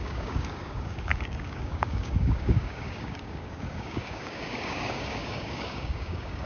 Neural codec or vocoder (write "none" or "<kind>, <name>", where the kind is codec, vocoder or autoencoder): codec, DAC